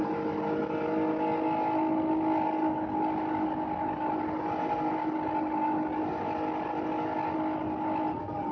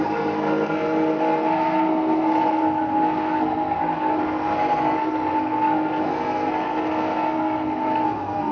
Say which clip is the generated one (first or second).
second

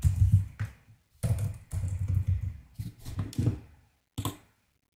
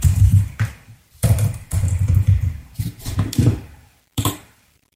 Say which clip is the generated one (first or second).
second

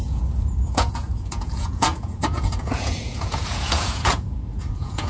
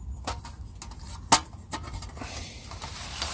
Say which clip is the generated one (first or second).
first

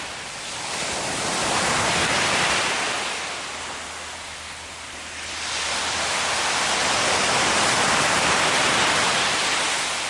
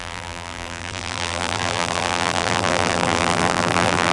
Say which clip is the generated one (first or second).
second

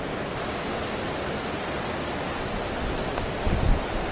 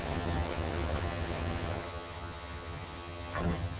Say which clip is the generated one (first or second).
second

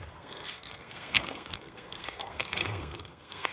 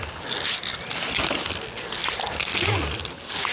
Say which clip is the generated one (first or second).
first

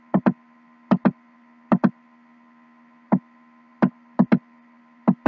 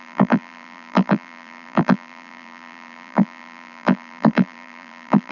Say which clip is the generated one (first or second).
second